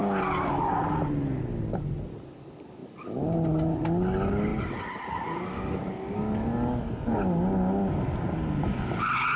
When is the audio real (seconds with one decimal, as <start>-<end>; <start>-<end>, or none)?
0.0-9.4